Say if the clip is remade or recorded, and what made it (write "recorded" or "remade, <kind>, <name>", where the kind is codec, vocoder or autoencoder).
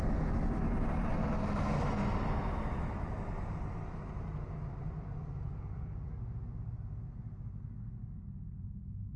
recorded